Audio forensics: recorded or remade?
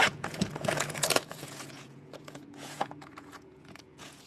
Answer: remade